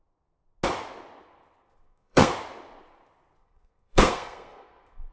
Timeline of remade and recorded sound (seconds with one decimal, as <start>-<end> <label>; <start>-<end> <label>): 0.0-1.6 recorded; 1.6-2.3 remade; 2.3-3.4 recorded; 3.4-5.1 remade